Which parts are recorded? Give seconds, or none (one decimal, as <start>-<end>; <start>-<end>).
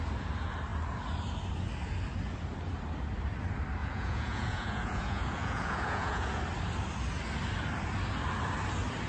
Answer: 0.0-3.8; 6.4-9.1